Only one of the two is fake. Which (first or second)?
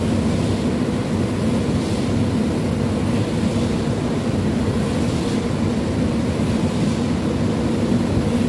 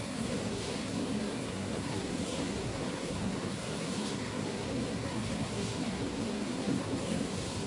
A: second